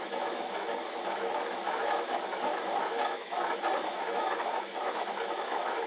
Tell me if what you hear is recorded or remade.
remade